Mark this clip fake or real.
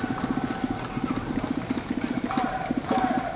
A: real